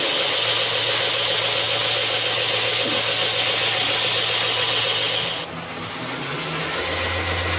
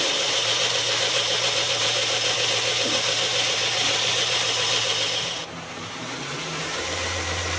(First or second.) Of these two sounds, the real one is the first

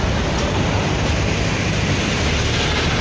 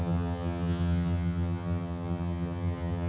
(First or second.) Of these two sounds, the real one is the first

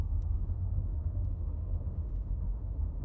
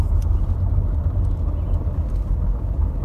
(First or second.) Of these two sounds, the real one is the second